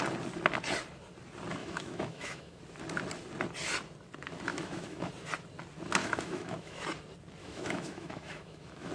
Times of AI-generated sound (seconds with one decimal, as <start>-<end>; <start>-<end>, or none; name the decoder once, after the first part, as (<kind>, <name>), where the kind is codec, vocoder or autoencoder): 1.6-2.6 (autoencoder, DAC-VAE); 4.5-5.1; 6.0-6.8; 7.4-8.9

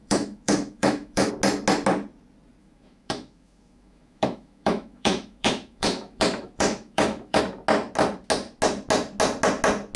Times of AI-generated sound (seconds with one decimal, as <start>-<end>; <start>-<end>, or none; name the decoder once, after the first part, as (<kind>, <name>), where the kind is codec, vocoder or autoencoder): 0.0-1.3 (autoencoder, DAC-VAE); 2.6-7.4

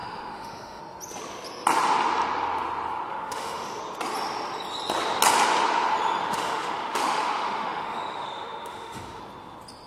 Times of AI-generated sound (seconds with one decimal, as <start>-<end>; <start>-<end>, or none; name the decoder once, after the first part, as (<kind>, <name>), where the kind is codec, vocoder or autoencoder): 0.0-0.8 (autoencoder, DAC-VAE); 3.1-3.8; 6.2-9.2

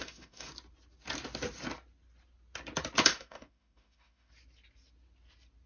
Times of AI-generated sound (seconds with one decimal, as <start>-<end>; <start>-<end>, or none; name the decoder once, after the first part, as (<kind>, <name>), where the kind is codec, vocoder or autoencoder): 0.0-0.5 (autoencoder, DAC-VAE); 3.1-4.3

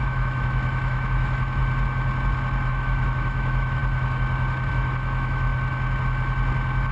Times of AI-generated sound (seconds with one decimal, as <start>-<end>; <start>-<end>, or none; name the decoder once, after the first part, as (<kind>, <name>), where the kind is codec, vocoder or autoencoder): 0.0-1.6 (autoencoder, DAC-VAE); 2.7-3.8; 4.7-5.5

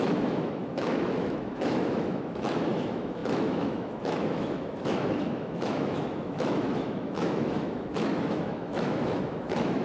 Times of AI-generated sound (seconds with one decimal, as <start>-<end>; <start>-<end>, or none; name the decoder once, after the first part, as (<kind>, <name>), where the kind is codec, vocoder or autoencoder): 0.0-9.8 (autoencoder, DAC-VAE)

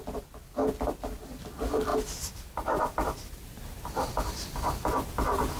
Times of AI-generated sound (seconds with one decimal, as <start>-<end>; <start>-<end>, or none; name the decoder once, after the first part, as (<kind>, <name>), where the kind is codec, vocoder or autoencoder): none

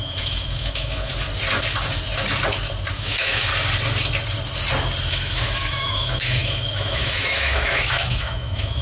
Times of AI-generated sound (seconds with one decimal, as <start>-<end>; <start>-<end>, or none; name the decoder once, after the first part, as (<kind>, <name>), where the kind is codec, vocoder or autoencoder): 0.0-1.1 (autoencoder, DAC-VAE); 2.9-3.5; 5.1-8.8